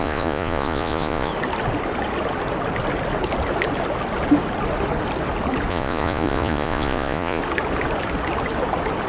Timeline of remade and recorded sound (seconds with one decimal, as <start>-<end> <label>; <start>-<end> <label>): 0.0-1.3 remade; 1.3-5.7 recorded; 5.7-7.4 remade; 7.4-9.1 recorded